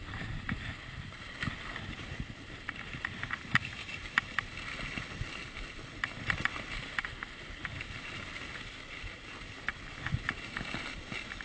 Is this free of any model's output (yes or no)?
yes